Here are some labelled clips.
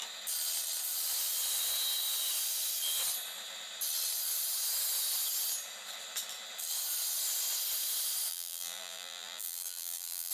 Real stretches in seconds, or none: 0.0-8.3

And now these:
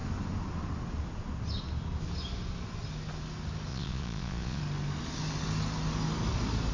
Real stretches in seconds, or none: 0.0-3.7; 4.6-6.7

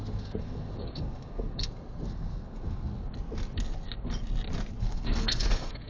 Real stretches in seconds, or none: 3.1-4.8

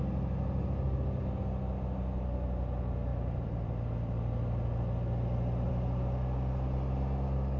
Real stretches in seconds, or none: 0.0-3.1; 5.7-7.6

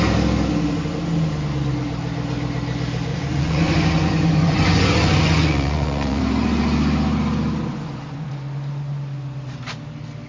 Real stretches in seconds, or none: 0.0-3.1; 6.2-7.7; 8.3-10.3

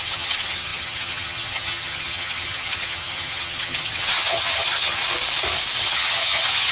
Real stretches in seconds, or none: 5.0-5.8

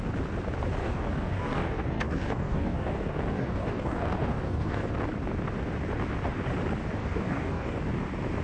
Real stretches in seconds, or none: 0.0-0.8; 4.9-7.0; 7.8-8.4

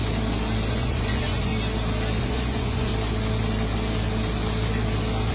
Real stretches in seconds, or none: 0.0-0.7; 1.5-2.2; 2.9-5.3